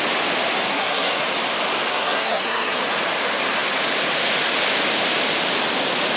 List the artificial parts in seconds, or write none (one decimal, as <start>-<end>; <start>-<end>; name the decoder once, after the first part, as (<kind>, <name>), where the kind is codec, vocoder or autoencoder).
0.7-1.2 (codec, SNAC); 1.9-2.8